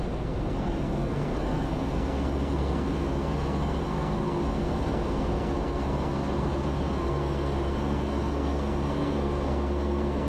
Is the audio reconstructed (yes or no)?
yes